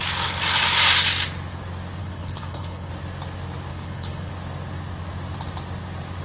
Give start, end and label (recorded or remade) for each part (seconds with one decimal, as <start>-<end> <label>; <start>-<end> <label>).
0.0-2.0 recorded; 2.0-2.9 remade; 2.9-3.7 recorded; 3.7-4.3 remade; 4.3-6.2 recorded